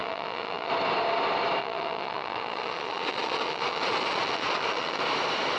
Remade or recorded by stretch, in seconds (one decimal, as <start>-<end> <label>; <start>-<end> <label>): 0.0-0.7 remade; 0.7-1.6 recorded; 1.6-5.0 remade; 5.0-5.6 recorded